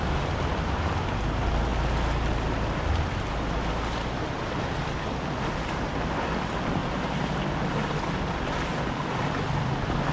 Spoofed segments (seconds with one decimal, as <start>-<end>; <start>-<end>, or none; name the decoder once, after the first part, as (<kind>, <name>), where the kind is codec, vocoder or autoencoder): none